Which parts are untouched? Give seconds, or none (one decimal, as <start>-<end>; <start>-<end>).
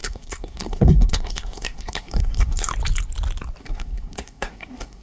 2.7-3.6